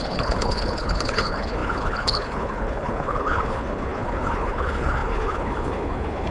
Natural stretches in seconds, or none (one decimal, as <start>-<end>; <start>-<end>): none